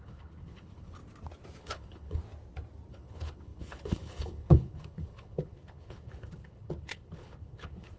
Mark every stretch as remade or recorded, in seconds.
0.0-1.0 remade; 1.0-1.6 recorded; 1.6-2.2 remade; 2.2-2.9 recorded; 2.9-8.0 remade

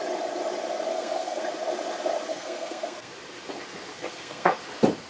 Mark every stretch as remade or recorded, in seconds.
0.0-0.9 recorded; 0.9-1.4 remade; 1.4-2.3 recorded; 2.3-3.1 remade; 3.1-3.9 recorded; 3.9-4.6 remade; 4.6-5.1 recorded

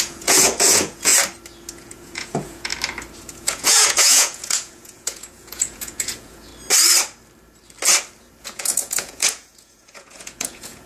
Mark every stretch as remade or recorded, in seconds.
0.0-1.1 remade; 1.1-1.7 recorded; 1.7-2.7 remade; 2.7-3.3 recorded; 3.3-6.5 remade; 6.5-8.4 recorded; 8.4-10.9 remade

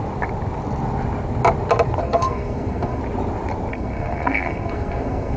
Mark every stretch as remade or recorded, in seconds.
0.0-2.0 recorded; 2.0-3.0 remade; 3.0-3.7 recorded; 3.7-5.4 remade

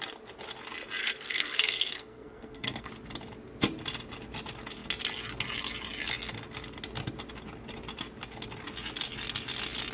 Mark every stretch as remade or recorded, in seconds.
0.0-1.0 recorded; 1.0-2.9 remade; 2.9-9.9 recorded

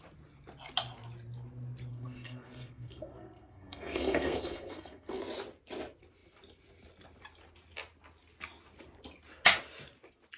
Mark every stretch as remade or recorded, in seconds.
0.0-1.9 recorded; 1.9-5.2 remade; 5.2-10.4 recorded

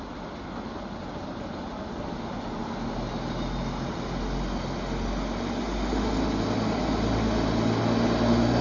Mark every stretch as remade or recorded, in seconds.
0.0-8.6 recorded

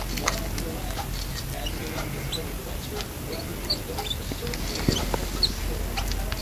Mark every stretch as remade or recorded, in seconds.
0.0-6.4 recorded